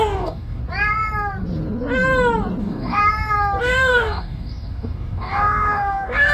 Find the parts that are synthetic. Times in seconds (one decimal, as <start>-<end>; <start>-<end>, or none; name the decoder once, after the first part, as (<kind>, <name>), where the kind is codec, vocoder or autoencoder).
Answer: 0.0-0.6 (codec, DAC); 2.6-3.0; 3.6-6.3